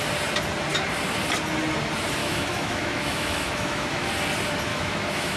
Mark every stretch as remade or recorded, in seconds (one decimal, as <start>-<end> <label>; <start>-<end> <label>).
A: 0.0-2.2 recorded; 2.2-4.1 remade; 4.1-4.7 recorded; 4.7-5.4 remade